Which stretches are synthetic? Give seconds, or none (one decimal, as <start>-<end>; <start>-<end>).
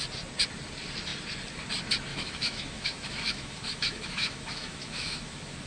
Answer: 2.1-5.7